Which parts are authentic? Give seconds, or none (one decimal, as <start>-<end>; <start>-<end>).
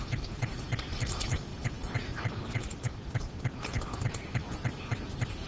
0.0-5.5